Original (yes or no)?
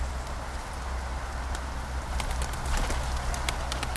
yes